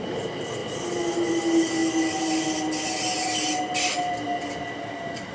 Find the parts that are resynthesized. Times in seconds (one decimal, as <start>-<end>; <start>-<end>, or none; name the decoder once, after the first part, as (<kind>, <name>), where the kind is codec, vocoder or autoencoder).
none